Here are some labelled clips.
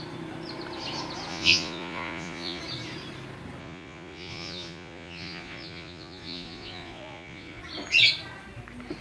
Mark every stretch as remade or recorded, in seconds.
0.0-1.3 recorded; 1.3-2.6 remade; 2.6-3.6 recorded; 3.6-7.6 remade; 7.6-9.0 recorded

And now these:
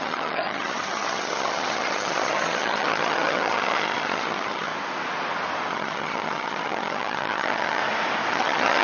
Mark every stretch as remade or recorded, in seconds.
0.0-4.7 remade; 4.7-5.7 recorded; 5.7-7.8 remade; 7.8-8.3 recorded; 8.3-8.8 remade

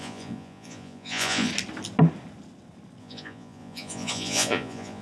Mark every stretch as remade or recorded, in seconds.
0.0-1.5 remade; 1.5-3.0 recorded; 3.0-5.0 remade

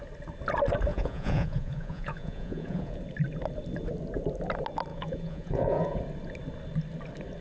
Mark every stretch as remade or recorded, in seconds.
0.0-0.9 recorded; 0.9-3.0 remade; 3.0-4.9 recorded; 4.9-6.0 remade; 6.0-7.4 recorded